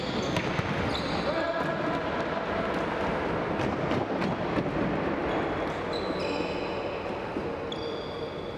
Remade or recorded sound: recorded